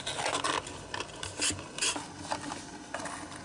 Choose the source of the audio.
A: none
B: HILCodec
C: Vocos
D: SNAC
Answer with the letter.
A